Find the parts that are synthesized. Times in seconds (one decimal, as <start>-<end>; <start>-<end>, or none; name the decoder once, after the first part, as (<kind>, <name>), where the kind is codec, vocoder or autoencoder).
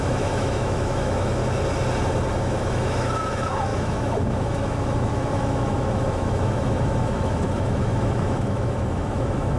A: 0.0-1.4 (autoencoder, DAC-VAE); 2.4-9.6